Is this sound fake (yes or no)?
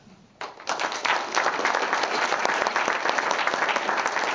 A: no